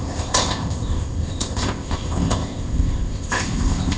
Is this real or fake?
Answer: fake